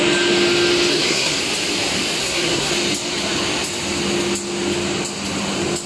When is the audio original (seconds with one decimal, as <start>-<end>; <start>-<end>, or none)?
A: 0.0-0.9; 1.4-2.2; 2.7-5.9